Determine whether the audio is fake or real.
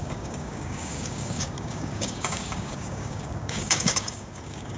fake